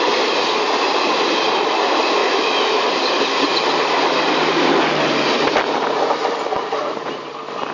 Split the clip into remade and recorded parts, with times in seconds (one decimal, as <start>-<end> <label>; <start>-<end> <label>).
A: 0.0-2.2 recorded; 2.2-2.8 remade; 2.8-7.7 recorded